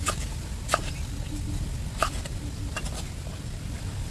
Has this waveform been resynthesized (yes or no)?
yes